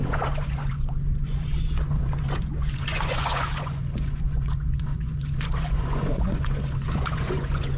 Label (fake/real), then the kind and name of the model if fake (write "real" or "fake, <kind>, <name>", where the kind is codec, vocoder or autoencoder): fake, vocoder, Vocos